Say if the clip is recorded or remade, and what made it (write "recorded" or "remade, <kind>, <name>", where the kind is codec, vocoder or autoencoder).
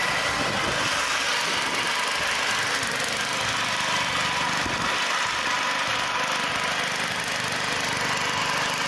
recorded